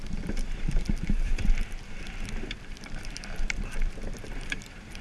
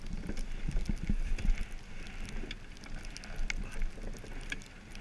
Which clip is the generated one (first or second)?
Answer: first